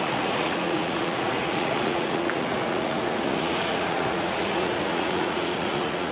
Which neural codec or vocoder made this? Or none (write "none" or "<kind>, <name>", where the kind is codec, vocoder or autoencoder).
vocoder, Vocos